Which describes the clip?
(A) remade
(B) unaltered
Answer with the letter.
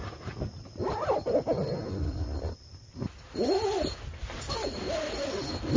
B